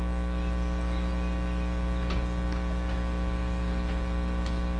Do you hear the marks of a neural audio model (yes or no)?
no